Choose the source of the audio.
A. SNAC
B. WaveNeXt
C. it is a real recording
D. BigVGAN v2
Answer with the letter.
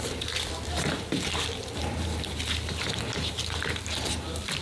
D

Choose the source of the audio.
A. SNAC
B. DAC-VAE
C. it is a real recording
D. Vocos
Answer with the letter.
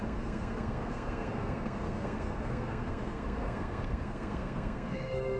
A